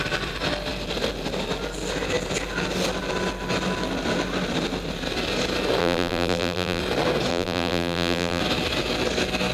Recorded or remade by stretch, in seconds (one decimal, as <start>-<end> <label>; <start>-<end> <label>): 0.0-5.8 recorded; 5.8-6.8 remade; 6.8-7.3 recorded; 7.3-8.4 remade; 8.4-9.5 recorded